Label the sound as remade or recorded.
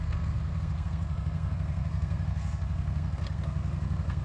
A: remade